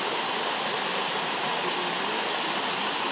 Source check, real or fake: real